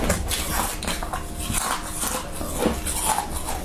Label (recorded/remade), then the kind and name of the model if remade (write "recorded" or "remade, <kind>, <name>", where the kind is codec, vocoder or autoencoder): recorded